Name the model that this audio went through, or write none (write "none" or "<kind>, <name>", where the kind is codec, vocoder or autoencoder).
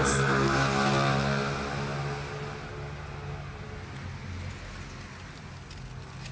none